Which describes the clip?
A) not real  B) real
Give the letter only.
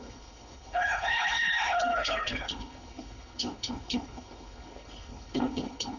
A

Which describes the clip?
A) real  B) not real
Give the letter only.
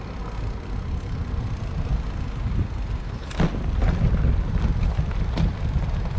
A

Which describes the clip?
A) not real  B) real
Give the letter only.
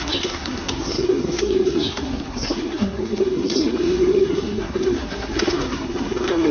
A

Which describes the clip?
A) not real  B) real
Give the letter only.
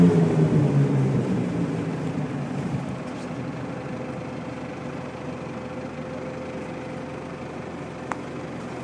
B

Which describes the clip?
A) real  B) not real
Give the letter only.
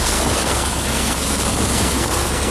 B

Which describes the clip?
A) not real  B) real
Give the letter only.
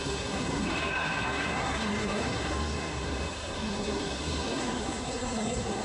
A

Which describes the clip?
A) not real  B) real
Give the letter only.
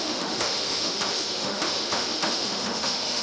A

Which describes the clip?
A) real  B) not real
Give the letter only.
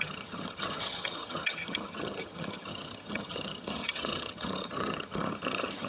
B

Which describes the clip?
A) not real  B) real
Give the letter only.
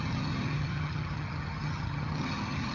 A